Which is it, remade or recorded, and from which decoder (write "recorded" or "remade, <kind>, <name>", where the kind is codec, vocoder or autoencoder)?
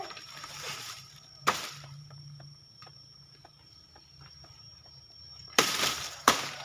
remade, vocoder, BigVGAN v2